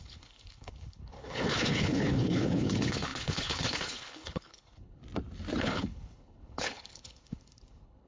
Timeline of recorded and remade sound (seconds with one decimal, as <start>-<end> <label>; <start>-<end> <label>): 0.0-5.0 remade; 5.0-5.6 recorded; 5.6-8.1 remade